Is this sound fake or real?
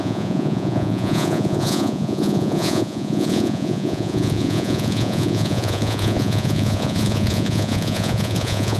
fake